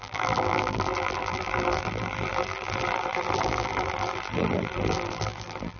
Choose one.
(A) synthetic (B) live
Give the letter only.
A